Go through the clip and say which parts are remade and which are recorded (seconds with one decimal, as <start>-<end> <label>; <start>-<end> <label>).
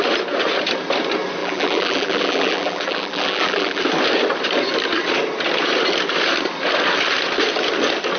0.0-1.4 recorded; 1.4-3.8 remade; 3.8-8.2 recorded